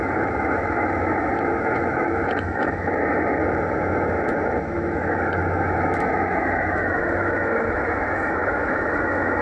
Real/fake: fake